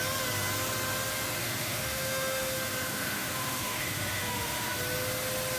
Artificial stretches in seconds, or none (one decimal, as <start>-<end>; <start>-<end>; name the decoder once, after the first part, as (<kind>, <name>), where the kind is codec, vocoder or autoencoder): 1.4-4.8 (autoencoder, DAC-VAE)